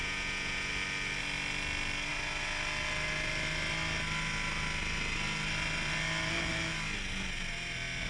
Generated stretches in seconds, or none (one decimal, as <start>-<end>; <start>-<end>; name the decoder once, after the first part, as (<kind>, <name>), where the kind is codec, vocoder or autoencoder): 0.0-0.7 (vocoder, Vocos)